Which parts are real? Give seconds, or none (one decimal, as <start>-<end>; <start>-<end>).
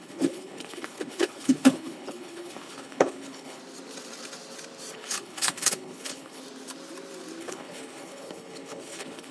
3.6-4.9; 6.4-7.4